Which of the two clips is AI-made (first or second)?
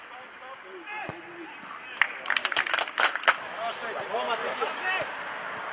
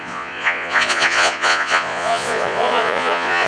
second